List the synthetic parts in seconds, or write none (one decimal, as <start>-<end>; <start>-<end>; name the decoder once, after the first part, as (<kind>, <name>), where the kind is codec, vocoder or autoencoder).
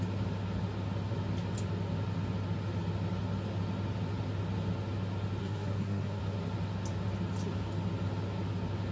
5.4-6.2 (codec, SNAC)